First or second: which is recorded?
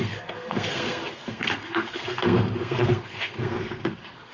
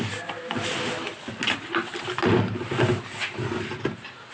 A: second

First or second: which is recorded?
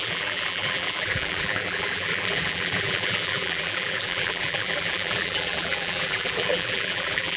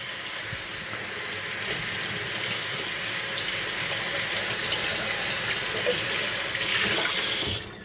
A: second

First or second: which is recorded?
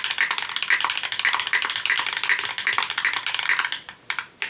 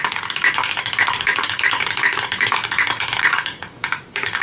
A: first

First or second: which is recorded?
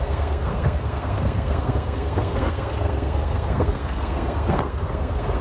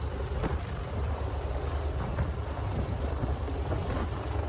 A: second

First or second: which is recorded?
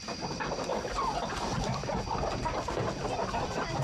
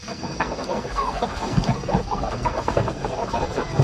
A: first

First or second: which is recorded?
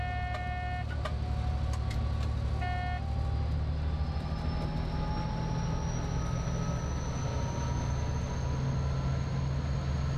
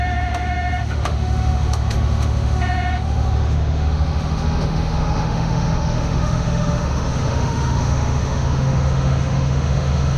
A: first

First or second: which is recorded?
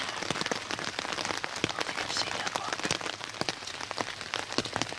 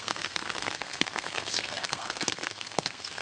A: first